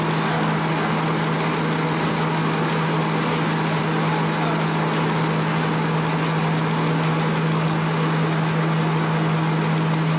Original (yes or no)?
yes